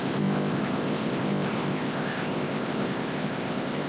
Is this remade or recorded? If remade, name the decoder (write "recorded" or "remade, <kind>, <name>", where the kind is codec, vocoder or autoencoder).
remade, codec, ZipCodec